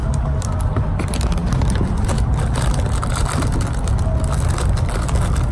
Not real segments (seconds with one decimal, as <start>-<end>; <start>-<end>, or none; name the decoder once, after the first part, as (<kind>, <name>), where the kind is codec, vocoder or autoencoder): none